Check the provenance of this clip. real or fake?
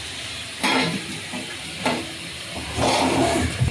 fake